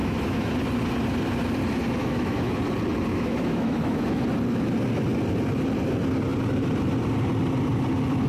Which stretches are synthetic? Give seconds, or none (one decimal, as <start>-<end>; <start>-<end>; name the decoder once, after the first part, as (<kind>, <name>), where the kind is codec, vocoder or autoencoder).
0.0-0.5 (autoencoder, DAC-VAE); 2.0-2.6; 3.1-4.2